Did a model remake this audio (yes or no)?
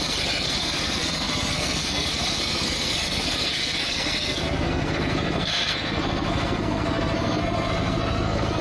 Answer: yes